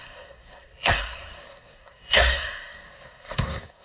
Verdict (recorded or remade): remade